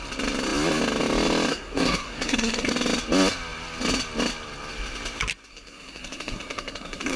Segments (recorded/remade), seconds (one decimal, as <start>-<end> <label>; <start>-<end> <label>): 0.0-1.5 recorded; 1.5-2.7 remade; 2.7-5.5 recorded; 5.5-7.2 remade